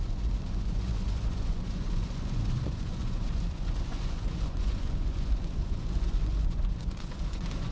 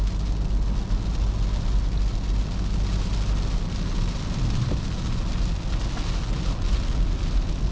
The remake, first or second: first